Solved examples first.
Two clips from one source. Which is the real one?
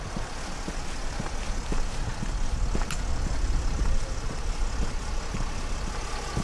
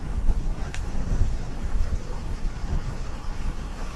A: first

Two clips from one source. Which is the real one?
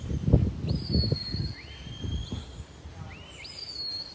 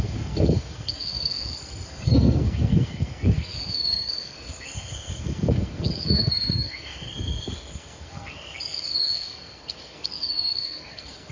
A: first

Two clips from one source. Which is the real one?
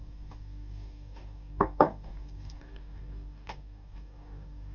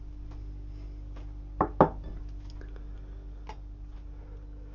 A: second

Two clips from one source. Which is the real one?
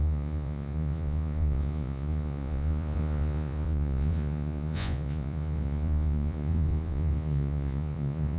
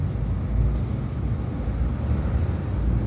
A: second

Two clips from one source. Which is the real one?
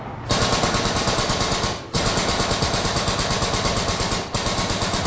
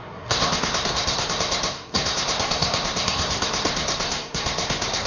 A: first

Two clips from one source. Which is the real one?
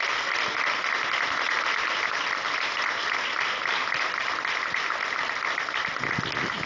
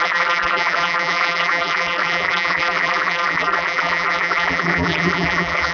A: first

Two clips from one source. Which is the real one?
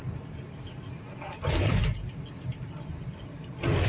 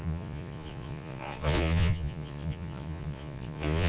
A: first